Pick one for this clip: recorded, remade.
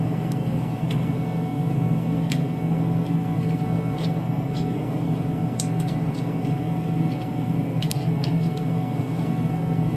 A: remade